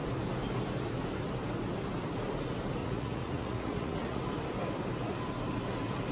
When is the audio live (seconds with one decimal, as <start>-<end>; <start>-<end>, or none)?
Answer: 0.0-2.8; 4.2-6.1